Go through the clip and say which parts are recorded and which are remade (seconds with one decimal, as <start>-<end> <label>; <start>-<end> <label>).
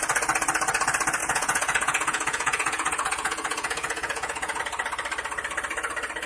0.0-1.2 recorded; 1.2-4.6 remade; 4.6-6.3 recorded